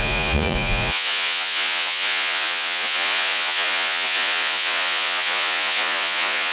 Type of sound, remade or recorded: remade